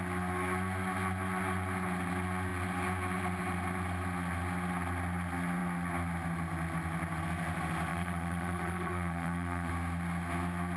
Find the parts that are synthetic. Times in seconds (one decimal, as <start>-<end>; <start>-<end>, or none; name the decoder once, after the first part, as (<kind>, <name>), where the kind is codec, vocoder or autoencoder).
7.9-9.7 (vocoder, Vocos)